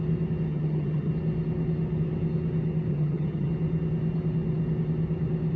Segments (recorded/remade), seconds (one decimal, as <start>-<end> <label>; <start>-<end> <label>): 0.0-0.5 recorded; 0.5-1.1 remade; 1.1-2.9 recorded; 2.9-3.5 remade; 3.5-5.6 recorded